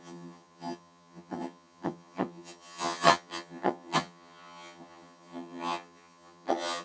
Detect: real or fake fake